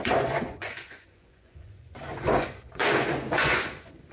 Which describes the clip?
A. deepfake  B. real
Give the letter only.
A